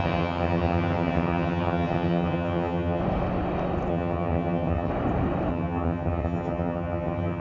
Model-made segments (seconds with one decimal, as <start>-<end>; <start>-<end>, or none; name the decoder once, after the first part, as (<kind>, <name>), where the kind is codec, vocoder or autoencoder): 0.0-3.0 (vocoder, HiFi-GAN); 3.9-4.9; 5.5-7.4

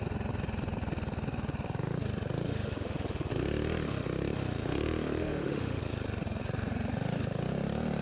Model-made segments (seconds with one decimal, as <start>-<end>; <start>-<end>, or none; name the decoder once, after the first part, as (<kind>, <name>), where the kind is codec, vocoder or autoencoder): 2.5-3.3 (autoencoder, DAC-VAE); 5.2-5.8

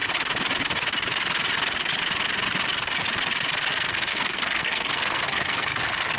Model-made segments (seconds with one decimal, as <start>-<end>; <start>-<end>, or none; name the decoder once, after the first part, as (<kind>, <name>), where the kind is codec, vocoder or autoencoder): 3.7-6.2 (codec, SNAC)